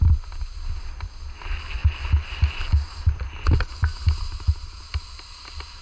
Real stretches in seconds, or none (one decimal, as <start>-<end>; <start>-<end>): 0.0-5.8

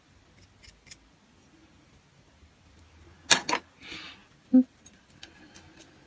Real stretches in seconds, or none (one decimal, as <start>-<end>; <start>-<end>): 0.0-6.1

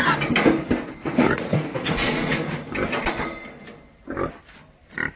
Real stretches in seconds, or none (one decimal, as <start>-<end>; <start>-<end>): 0.0-1.0; 2.7-5.2

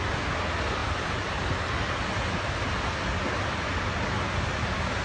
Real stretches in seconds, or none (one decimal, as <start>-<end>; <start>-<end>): 0.0-5.0

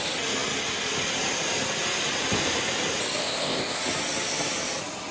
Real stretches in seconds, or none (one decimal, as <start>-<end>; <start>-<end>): 0.0-3.2; 3.8-5.1

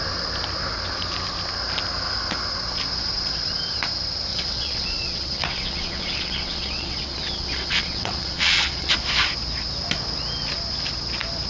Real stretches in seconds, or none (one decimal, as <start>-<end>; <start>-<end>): 0.0-4.3; 8.9-11.5

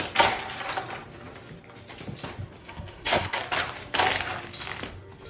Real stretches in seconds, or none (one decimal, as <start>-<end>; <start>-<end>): 0.0-2.6; 3.4-5.3